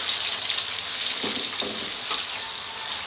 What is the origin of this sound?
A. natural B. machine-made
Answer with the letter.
A